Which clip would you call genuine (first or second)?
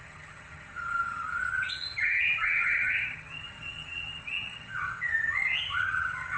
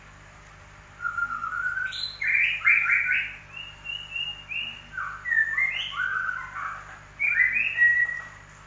second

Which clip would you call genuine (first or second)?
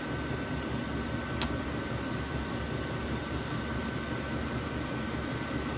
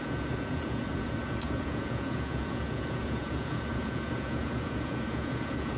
first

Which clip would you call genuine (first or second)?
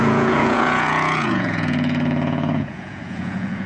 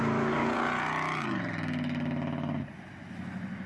second